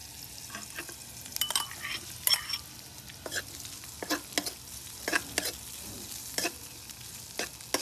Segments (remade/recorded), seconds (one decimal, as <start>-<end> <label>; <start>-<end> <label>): 0.0-7.8 recorded